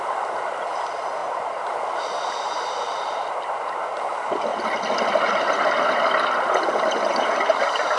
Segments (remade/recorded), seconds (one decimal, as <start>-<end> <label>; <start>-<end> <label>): 0.0-1.2 remade; 1.2-2.0 recorded; 2.0-4.5 remade; 4.5-5.9 recorded; 5.9-8.0 remade